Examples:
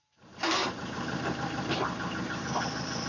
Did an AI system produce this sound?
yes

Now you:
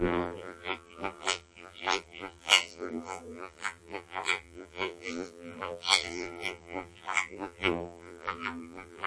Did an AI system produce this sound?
yes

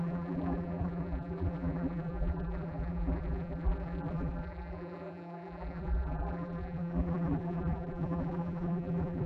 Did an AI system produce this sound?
yes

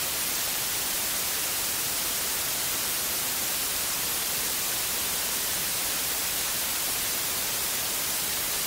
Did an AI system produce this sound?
yes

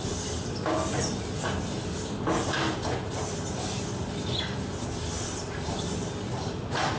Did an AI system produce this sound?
yes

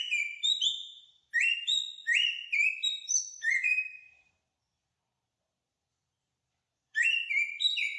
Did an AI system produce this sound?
yes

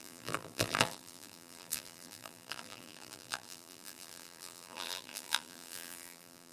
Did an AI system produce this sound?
yes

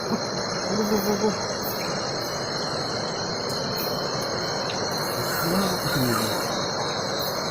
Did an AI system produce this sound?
no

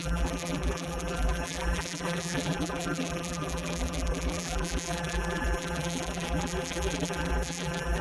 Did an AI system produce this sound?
yes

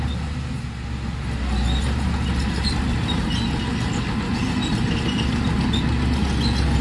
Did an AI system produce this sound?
no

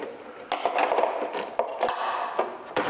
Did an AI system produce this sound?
no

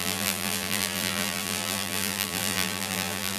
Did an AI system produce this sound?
yes